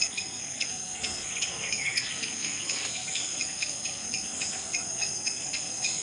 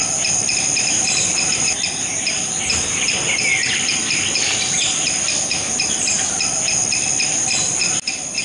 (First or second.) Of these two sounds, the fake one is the first